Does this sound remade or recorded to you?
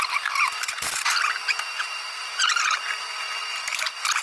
remade